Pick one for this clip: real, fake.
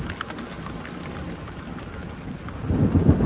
real